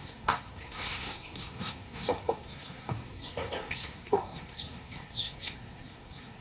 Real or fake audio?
fake